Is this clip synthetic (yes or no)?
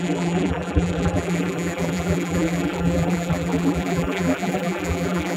yes